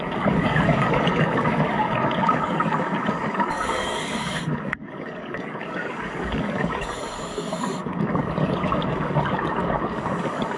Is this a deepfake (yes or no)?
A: yes